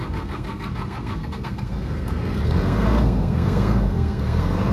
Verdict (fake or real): fake